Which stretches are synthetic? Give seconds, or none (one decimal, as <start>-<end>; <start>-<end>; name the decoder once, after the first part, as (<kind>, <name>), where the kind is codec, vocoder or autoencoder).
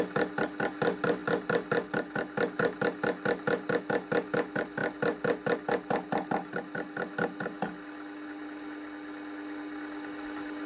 none